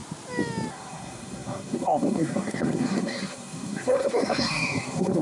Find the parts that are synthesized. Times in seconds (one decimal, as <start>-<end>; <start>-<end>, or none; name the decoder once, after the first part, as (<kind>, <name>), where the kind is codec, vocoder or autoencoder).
0.7-5.2 (codec, SNAC)